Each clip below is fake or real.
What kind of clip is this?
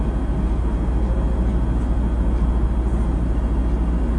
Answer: real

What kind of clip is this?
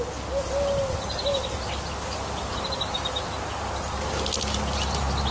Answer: real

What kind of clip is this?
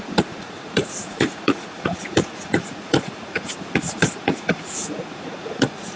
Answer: fake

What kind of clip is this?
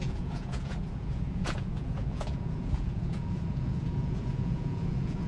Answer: fake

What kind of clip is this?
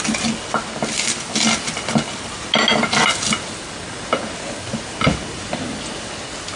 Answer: real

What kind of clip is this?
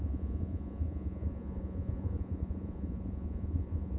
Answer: fake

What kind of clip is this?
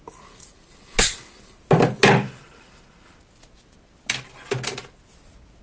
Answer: real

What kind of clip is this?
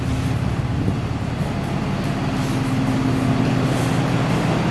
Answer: real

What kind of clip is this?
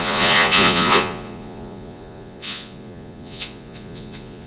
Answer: fake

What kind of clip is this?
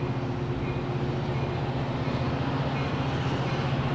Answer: real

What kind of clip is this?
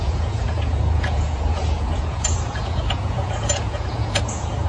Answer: fake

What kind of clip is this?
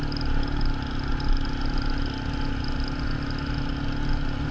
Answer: real